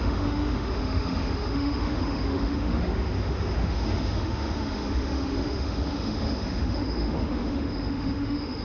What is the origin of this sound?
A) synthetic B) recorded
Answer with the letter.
A